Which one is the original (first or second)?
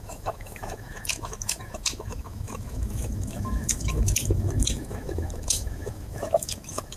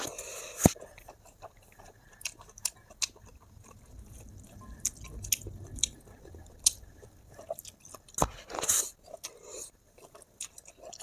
second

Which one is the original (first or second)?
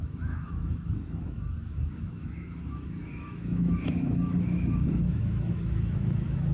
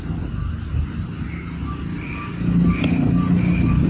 second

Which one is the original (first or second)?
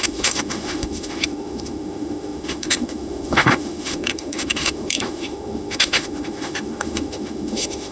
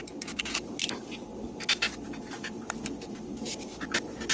second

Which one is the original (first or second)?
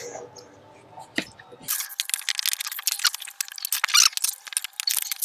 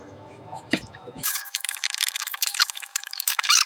first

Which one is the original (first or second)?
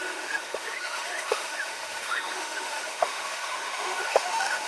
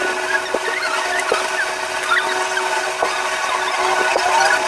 second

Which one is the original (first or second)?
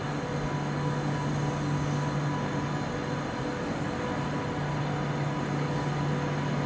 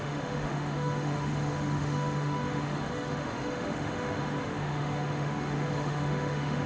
first